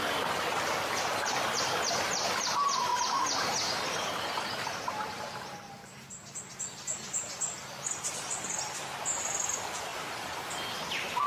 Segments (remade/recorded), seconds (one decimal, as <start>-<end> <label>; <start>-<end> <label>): 0.0-2.9 recorded; 2.9-6.4 remade; 6.4-9.9 recorded; 9.9-10.6 remade; 10.6-11.3 recorded